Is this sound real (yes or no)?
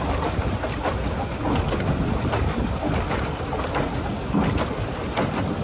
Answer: yes